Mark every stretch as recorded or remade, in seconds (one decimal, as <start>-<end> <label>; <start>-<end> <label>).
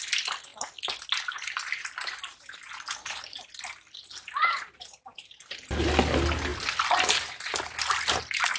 0.0-8.6 recorded